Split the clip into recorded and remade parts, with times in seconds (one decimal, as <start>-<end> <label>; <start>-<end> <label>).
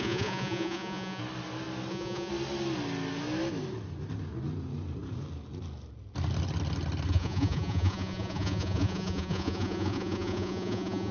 0.0-1.2 remade; 1.2-1.9 recorded; 1.9-2.3 remade; 2.3-7.1 recorded; 7.1-11.1 remade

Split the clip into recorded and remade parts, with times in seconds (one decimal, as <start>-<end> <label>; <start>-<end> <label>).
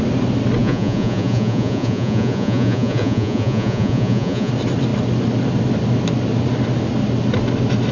0.0-0.6 recorded; 0.6-4.5 remade; 4.5-7.9 recorded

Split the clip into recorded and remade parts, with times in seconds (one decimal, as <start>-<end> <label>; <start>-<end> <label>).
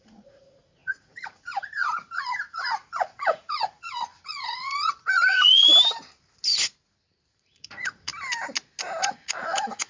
0.0-5.7 remade; 5.7-7.3 recorded; 7.3-8.1 remade; 8.1-9.0 recorded; 9.0-9.9 remade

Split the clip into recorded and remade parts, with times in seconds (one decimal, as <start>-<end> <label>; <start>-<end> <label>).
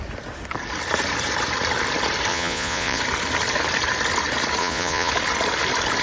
0.0-2.3 recorded; 2.3-3.0 remade; 3.0-4.6 recorded; 4.6-5.1 remade; 5.1-6.0 recorded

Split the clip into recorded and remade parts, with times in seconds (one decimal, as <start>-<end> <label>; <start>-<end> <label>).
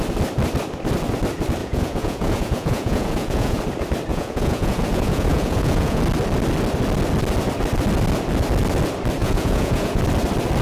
0.0-1.6 recorded; 1.6-3.6 remade; 3.6-4.1 recorded; 4.1-6.0 remade; 6.0-9.2 recorded; 9.2-10.0 remade; 10.0-10.6 recorded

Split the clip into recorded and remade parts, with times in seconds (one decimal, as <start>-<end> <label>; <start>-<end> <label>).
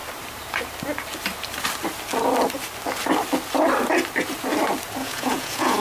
0.0-5.0 recorded; 5.0-5.8 remade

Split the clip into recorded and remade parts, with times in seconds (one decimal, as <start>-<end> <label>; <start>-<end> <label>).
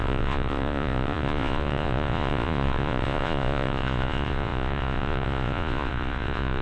0.0-6.6 remade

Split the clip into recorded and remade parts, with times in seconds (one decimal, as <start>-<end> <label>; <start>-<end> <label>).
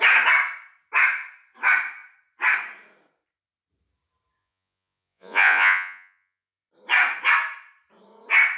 0.0-4.4 recorded; 4.4-6.7 remade; 6.7-8.6 recorded